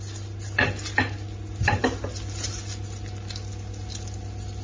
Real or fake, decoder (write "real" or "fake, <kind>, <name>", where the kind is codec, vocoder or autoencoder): real